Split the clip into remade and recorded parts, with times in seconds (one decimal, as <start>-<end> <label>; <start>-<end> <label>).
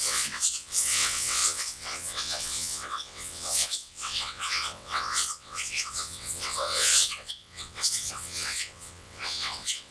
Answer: 0.0-9.9 remade